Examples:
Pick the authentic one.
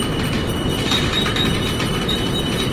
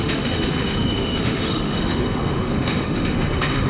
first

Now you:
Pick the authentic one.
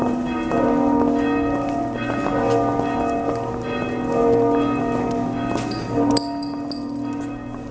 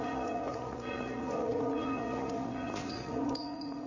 first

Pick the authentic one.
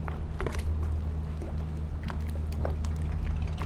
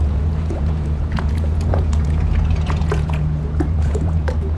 first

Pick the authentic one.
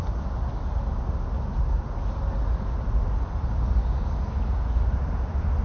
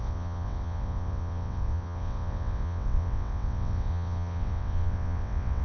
first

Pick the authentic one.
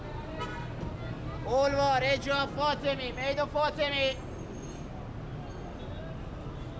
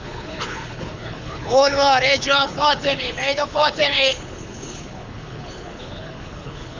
first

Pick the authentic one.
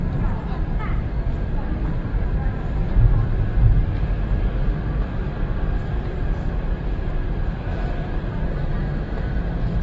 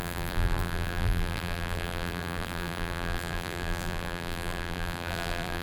first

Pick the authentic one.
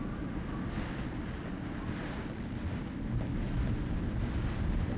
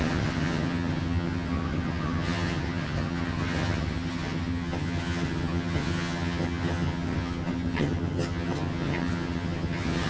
first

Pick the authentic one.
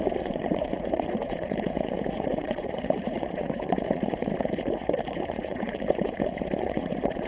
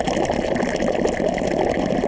second